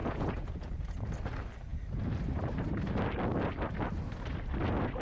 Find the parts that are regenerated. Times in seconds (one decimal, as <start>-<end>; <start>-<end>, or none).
0.0-1.1